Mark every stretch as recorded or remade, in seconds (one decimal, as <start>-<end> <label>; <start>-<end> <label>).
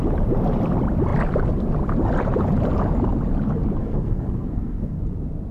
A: 0.0-3.8 recorded; 3.8-5.0 remade; 5.0-5.5 recorded